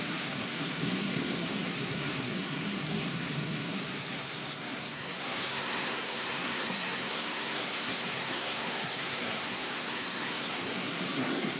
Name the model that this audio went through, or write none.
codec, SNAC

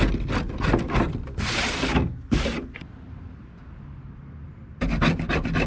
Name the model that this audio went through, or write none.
none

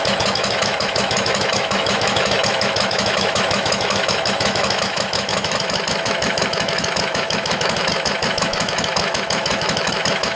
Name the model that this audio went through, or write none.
autoencoder, DAC-VAE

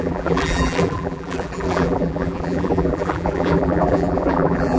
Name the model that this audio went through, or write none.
vocoder, BigVGAN v2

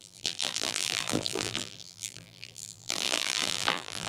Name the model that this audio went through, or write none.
vocoder, BigVGAN v2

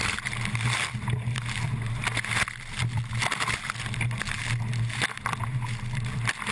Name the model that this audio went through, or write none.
none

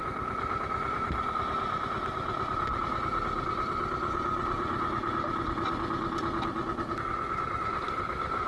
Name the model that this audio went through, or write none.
none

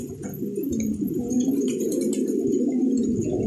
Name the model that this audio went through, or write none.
none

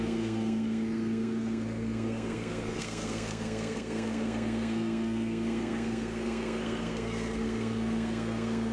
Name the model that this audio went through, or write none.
codec, SNAC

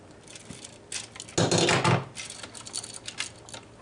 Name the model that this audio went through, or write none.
none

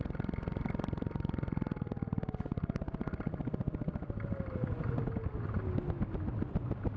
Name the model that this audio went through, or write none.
none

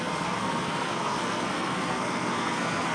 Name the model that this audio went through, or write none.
codec, SNAC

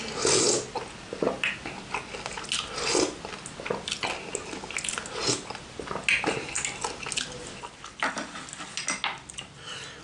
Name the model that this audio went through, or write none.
none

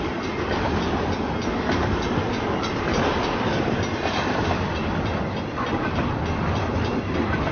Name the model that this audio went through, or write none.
none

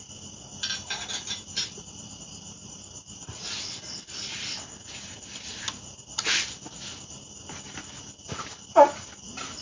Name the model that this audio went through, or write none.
none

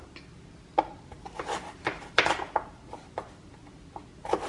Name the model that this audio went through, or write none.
none